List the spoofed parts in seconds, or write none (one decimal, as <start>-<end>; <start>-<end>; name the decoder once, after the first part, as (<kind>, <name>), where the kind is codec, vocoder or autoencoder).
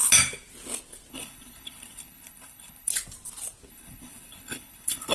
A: 1.1-2.9 (codec, HILCodec); 3.7-5.1